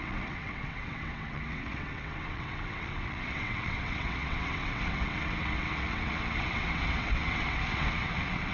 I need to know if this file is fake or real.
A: fake